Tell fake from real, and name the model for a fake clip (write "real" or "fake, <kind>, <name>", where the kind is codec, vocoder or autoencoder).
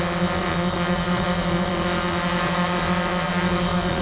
fake, vocoder, Vocos